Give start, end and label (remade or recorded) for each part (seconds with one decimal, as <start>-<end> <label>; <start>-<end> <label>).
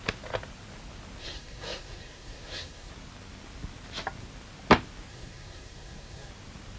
0.0-1.2 recorded; 1.2-2.9 remade; 2.9-5.1 recorded; 5.1-6.3 remade; 6.3-6.8 recorded